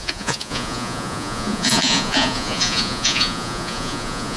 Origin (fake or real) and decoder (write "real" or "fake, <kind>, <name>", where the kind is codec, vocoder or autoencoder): fake, vocoder, Vocos